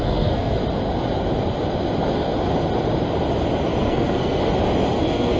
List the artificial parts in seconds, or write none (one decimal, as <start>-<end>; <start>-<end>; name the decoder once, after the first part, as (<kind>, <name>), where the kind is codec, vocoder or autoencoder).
0.0-0.6 (codec, SNAC); 3.8-4.4; 5.0-5.4